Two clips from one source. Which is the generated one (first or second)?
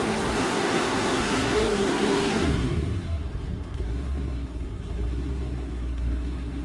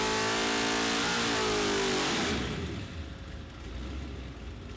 first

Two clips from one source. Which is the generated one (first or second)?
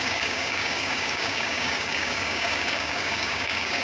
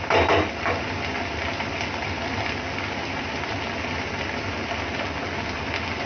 first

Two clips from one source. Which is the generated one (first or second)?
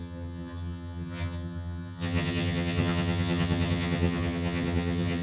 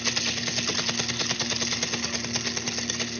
first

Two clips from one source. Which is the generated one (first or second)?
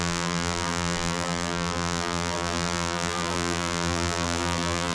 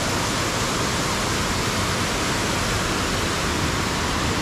first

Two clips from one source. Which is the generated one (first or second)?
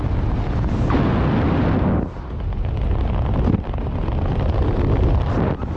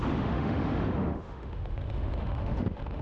second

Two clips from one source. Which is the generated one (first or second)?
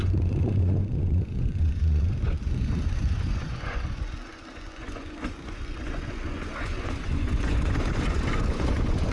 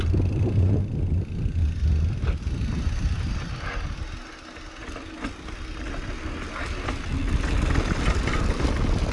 first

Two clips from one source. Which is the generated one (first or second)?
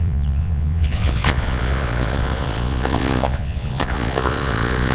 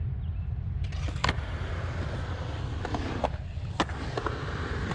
first